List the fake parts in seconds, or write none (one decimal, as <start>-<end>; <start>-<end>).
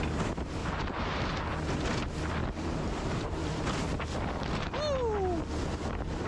0.6-1.4; 2.4-3.6